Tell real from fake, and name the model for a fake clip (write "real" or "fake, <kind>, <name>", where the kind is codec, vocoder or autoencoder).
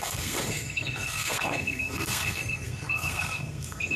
fake, codec, SNAC